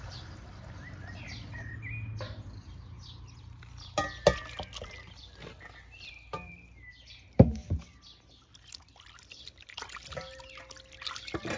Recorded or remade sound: recorded